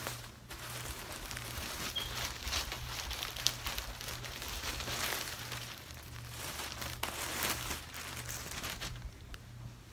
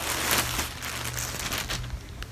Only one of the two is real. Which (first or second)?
second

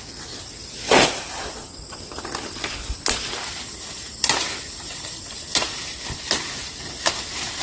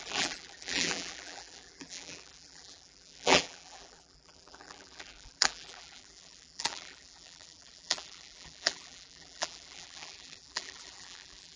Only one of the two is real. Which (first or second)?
first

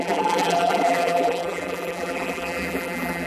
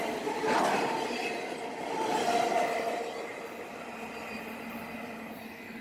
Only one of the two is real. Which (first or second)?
second